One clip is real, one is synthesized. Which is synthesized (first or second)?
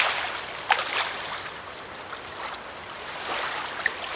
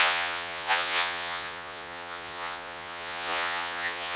second